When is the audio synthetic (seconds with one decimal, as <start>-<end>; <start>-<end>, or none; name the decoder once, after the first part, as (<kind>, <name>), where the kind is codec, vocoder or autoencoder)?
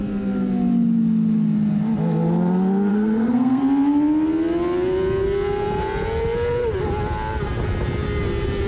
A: 2.9-3.6 (codec, SNAC)